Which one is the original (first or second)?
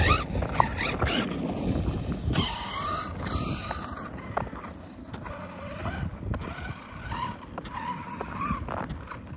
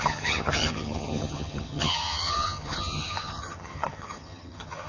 first